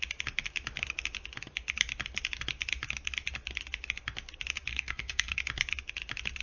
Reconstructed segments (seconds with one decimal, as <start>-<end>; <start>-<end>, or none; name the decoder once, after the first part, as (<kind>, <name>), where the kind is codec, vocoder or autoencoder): 4.7-5.4 (codec, SNAC)